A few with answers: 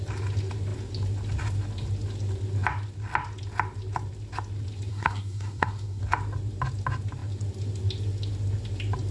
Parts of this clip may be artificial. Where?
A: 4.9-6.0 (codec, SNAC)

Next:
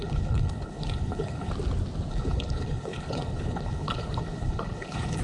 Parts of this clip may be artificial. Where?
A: 0.0-1.5 (codec, HILCodec); 2.1-5.2

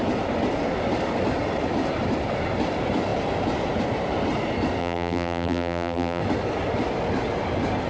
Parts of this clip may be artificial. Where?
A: 4.8-6.2 (vocoder, BigVGAN v2)

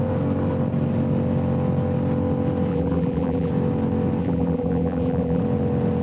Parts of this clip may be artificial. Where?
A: 2.7-3.5 (vocoder, BigVGAN v2); 4.2-5.4

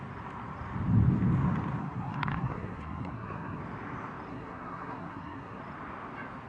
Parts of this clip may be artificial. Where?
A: 1.8-3.6 (codec, SNAC); 4.3-5.6

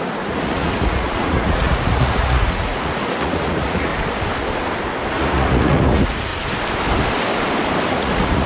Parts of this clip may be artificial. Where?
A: 0.0-3.9 (vocoder, Vocos); 5.1-6.3; 7.9-8.5